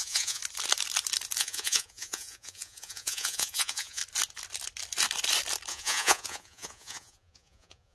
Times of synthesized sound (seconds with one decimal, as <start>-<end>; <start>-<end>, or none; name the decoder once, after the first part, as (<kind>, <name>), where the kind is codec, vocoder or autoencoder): 0.0-0.4 (vocoder, Vocos); 1.4-4.0; 5.7-7.9